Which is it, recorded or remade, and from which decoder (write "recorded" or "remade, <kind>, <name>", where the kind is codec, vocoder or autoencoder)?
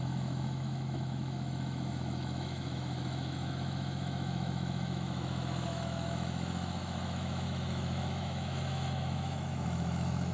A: remade, autoencoder, DAC-VAE